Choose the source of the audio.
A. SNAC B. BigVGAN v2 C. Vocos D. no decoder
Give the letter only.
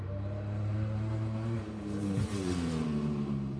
B